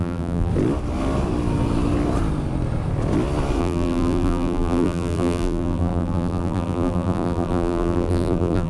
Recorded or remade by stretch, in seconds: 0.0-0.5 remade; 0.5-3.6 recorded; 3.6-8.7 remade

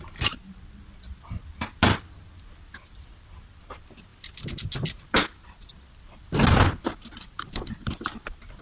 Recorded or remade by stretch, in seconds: 0.0-8.6 recorded

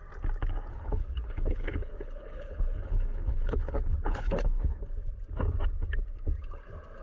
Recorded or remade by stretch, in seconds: 0.0-0.7 recorded; 0.7-4.9 remade; 4.9-7.0 recorded